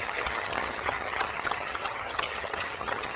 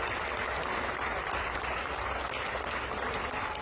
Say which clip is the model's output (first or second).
first